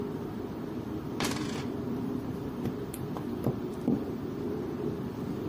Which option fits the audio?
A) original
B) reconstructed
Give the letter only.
B